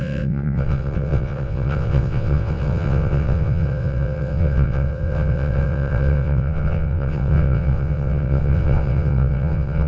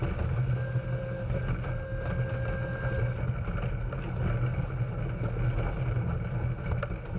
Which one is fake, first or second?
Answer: first